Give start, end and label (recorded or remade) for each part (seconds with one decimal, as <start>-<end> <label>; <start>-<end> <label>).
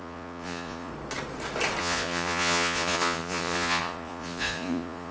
0.0-0.9 remade; 0.9-1.8 recorded; 1.8-5.1 remade